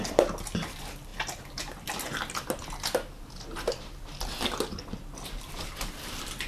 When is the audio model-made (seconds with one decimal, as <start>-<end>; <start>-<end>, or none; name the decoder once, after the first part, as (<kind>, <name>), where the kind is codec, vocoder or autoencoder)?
none